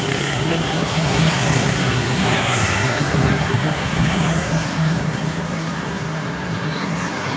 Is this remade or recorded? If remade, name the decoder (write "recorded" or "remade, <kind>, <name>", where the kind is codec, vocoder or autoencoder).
remade, codec, SNAC